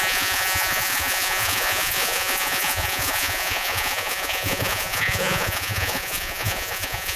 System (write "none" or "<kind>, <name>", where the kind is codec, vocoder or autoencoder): vocoder, Vocos